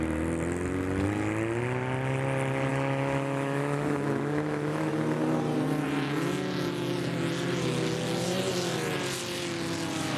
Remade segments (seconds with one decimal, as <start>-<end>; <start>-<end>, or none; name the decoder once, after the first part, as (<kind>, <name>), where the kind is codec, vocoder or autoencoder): 2.7-4.9 (autoencoder, DAC-VAE)